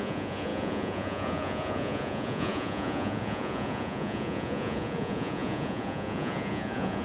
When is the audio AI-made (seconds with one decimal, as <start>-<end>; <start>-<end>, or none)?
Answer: 0.0-7.0